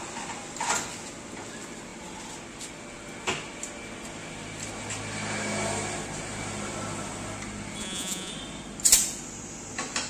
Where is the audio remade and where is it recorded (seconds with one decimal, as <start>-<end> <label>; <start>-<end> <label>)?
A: 0.0-7.8 recorded; 7.8-8.3 remade; 8.3-10.1 recorded